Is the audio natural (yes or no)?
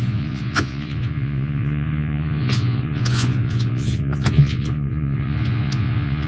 no